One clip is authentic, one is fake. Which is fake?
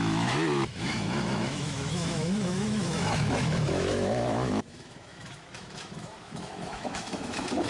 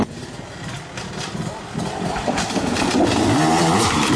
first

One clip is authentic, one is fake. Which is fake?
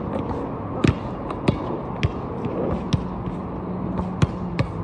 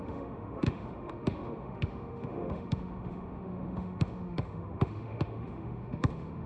second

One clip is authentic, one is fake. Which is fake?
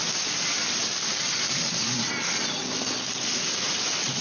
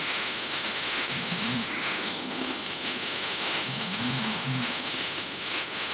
second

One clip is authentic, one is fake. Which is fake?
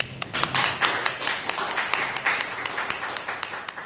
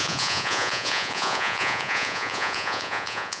second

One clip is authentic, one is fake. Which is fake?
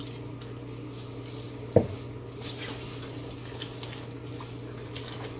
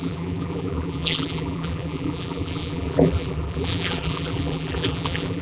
second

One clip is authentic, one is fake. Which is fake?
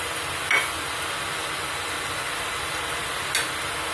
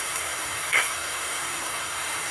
second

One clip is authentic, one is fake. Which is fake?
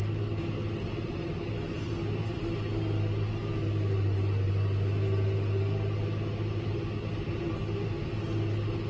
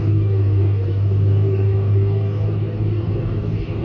second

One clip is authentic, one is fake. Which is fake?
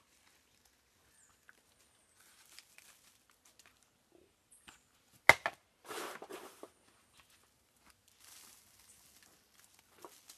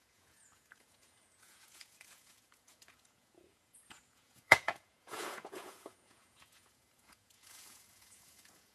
second